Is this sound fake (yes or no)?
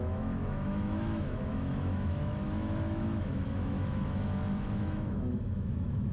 yes